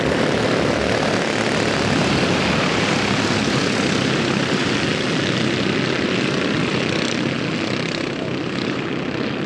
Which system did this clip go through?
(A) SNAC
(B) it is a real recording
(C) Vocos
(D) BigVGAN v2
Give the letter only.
B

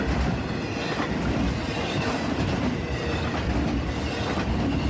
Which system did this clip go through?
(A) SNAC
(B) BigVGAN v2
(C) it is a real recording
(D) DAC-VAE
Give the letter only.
C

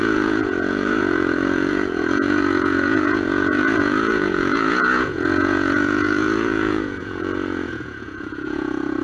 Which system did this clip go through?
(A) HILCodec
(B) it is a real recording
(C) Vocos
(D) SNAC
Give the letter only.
C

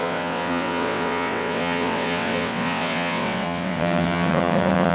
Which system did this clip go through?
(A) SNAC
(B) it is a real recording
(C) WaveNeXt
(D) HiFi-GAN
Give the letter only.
C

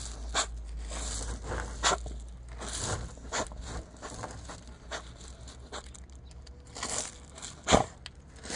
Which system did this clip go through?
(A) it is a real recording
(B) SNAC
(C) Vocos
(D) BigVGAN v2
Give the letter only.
A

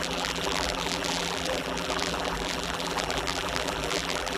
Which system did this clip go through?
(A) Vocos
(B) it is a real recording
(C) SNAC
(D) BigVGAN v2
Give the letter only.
D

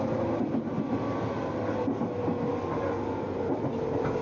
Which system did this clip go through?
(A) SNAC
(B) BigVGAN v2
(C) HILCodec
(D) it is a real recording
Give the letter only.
D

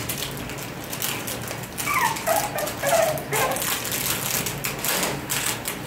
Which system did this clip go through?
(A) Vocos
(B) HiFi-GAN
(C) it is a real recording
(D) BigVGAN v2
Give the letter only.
C